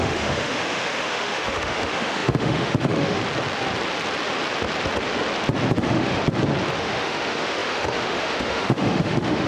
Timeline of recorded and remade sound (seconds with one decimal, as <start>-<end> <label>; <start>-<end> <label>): 0.0-3.2 remade; 3.2-5.8 recorded; 5.8-6.2 remade; 6.2-6.8 recorded; 6.8-9.5 remade